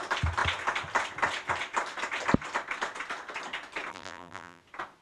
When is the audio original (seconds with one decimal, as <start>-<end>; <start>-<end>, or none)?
0.0-3.9; 4.6-5.0